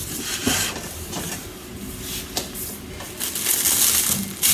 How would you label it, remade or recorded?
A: recorded